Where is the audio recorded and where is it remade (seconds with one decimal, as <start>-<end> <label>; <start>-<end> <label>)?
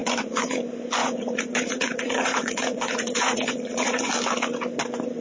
0.0-0.6 remade; 0.6-1.0 recorded; 1.0-4.1 remade; 4.1-5.2 recorded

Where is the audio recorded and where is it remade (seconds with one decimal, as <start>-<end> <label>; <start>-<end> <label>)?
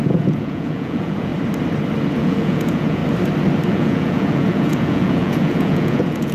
0.0-1.3 remade; 1.3-2.2 recorded; 2.2-3.0 remade; 3.0-3.7 recorded; 3.7-6.3 remade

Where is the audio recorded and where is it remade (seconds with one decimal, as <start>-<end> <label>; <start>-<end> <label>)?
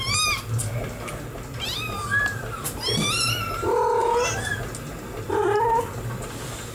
0.0-6.7 recorded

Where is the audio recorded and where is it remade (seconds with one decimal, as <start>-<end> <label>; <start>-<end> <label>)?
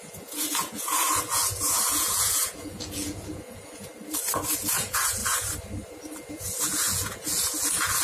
0.0-3.9 remade; 3.9-4.5 recorded; 4.5-5.2 remade; 5.2-6.3 recorded; 6.3-8.0 remade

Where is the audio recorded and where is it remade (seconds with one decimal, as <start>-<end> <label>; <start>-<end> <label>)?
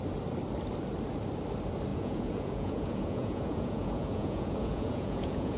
0.0-1.9 recorded; 1.9-5.6 remade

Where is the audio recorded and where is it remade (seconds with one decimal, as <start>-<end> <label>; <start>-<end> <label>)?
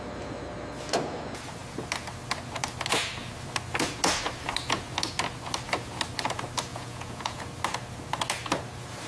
0.0-6.7 recorded; 6.7-7.4 remade; 7.4-9.1 recorded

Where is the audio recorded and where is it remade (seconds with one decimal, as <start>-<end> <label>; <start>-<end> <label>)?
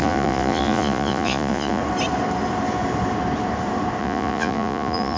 0.0-1.8 remade; 1.8-4.0 recorded; 4.0-5.2 remade